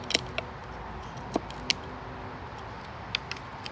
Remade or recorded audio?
recorded